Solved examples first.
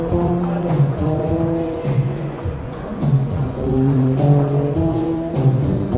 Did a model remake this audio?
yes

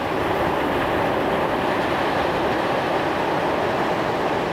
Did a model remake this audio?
yes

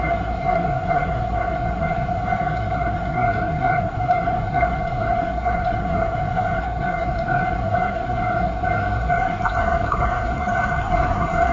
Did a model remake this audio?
yes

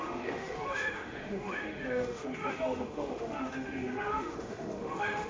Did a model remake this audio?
yes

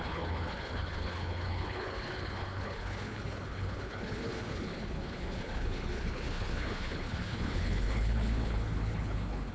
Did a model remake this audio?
yes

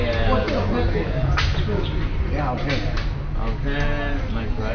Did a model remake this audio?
no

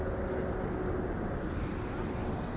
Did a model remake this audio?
no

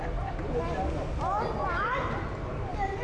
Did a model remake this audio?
no